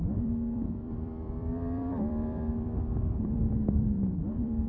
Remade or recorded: remade